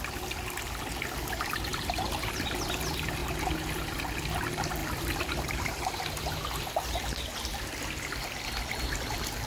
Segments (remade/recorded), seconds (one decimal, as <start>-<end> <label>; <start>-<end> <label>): 0.0-1.7 recorded; 1.7-2.6 remade; 2.6-3.2 recorded; 3.2-4.0 remade; 4.0-4.8 recorded; 4.8-5.8 remade; 5.8-9.5 recorded